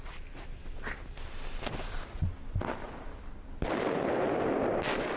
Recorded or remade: recorded